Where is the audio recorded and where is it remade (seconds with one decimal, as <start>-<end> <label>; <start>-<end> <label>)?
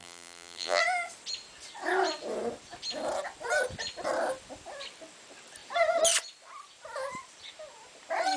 0.0-0.8 remade; 0.8-8.4 recorded